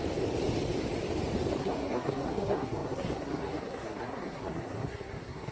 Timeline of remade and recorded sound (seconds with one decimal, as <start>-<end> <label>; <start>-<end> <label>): 0.0-1.6 recorded; 1.6-5.5 remade